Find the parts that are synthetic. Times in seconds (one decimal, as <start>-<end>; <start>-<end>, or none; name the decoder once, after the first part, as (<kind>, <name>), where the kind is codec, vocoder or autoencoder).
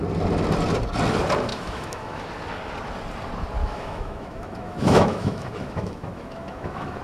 1.5-2.3 (autoencoder, DAC-VAE); 3.6-7.0